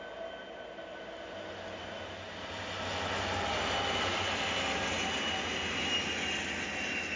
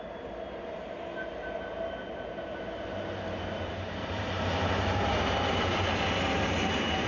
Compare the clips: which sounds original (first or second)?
first